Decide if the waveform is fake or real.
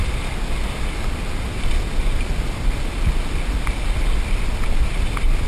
real